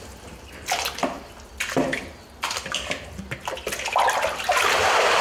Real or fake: real